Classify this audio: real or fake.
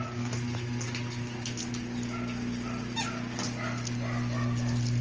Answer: real